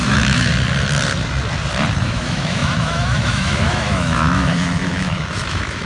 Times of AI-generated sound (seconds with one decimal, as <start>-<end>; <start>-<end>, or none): 0.0-0.5; 2.0-5.9